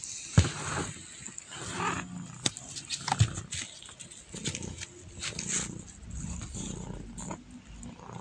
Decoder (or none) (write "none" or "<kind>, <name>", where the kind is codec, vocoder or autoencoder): none